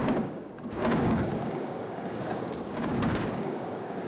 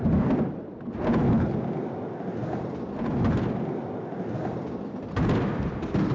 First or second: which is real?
second